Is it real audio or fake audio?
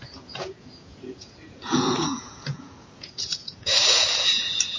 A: fake